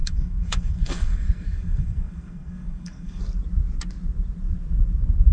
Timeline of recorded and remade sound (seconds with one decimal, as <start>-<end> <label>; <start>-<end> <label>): 0.0-3.2 remade; 3.2-5.3 recorded